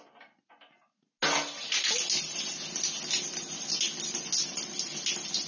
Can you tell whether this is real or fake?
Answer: real